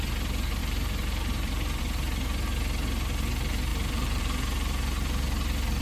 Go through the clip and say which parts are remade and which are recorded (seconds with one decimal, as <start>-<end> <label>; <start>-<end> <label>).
0.0-0.6 recorded; 0.6-1.8 remade; 1.8-3.7 recorded; 3.7-4.2 remade; 4.2-5.8 recorded

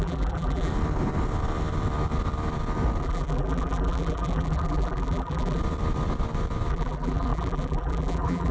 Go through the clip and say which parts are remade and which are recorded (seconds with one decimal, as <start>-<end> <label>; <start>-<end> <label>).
0.0-0.7 remade; 0.7-3.0 recorded; 3.0-5.6 remade; 5.6-6.7 recorded; 6.7-8.5 remade

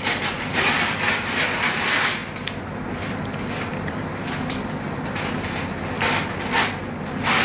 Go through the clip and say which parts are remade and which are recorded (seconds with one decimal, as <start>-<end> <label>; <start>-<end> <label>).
0.0-7.4 recorded

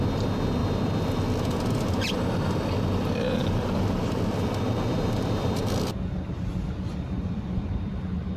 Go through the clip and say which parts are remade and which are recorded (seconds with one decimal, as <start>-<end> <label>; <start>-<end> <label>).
0.0-3.4 recorded; 3.4-7.9 remade; 7.9-8.4 recorded

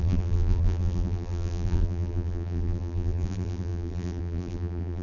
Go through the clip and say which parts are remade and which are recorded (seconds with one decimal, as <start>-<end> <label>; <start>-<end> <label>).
0.0-5.0 remade

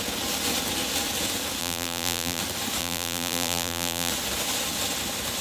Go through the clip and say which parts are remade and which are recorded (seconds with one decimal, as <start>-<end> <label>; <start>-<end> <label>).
0.0-1.6 recorded; 1.6-2.4 remade; 2.4-2.8 recorded; 2.8-4.1 remade; 4.1-5.4 recorded